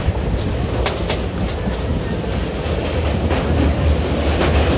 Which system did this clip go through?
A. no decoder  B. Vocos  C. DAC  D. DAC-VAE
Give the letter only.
A